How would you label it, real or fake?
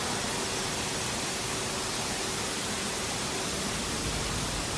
real